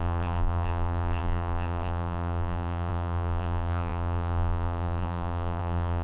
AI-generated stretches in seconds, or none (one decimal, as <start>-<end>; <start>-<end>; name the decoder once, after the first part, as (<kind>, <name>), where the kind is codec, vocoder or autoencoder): 0.0-6.0 (vocoder, BigVGAN v2)